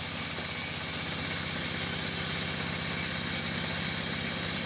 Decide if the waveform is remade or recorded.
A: recorded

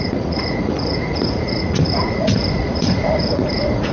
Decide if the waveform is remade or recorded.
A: remade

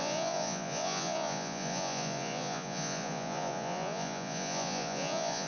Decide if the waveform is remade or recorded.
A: remade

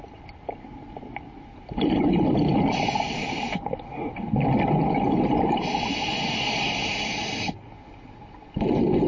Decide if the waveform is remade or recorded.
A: recorded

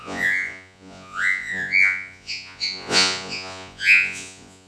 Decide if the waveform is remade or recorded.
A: remade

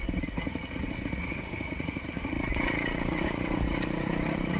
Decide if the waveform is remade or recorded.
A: remade